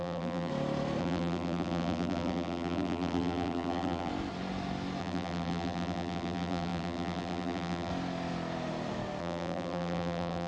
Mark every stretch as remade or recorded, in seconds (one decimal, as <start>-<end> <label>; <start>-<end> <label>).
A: 0.0-0.5 remade; 0.5-1.0 recorded; 1.0-4.1 remade; 4.1-5.0 recorded; 5.0-7.9 remade; 7.9-9.2 recorded; 9.2-10.5 remade